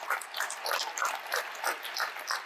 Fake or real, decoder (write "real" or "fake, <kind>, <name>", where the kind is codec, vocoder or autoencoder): real